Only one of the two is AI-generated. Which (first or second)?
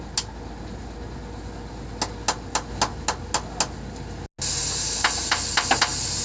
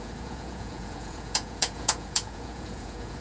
second